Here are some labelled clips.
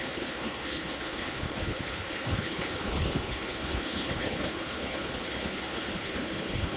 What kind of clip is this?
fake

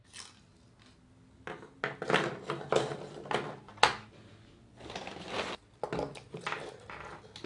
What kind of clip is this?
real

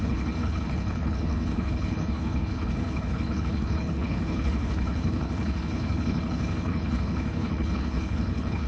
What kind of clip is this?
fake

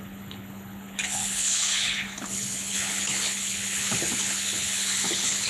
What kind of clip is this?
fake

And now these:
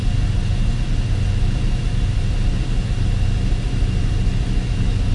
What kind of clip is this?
real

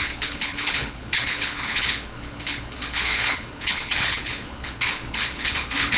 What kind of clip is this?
fake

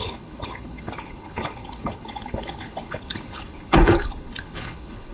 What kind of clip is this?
fake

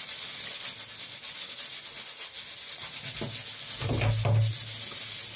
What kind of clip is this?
real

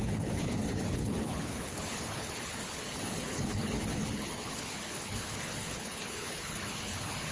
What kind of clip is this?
fake